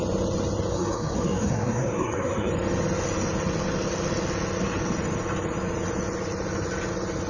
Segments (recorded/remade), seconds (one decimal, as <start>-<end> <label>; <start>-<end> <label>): 0.0-0.7 recorded; 0.7-2.5 remade; 2.5-7.3 recorded